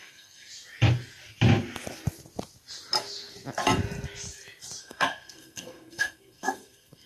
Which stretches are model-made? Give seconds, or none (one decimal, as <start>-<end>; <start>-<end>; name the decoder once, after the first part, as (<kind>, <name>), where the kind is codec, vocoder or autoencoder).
0.0-0.5 (codec, SNAC); 4.8-7.1